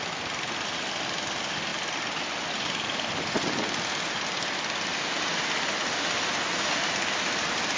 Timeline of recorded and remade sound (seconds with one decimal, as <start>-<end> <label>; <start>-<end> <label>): 0.0-7.8 recorded